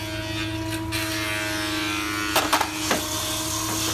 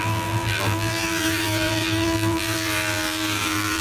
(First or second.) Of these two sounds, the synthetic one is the second